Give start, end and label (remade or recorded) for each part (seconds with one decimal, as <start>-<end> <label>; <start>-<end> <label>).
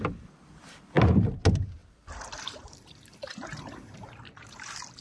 0.0-1.8 recorded; 1.8-4.4 remade; 4.4-5.0 recorded